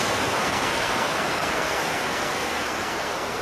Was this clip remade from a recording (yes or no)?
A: yes